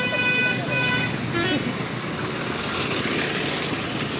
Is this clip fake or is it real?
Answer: real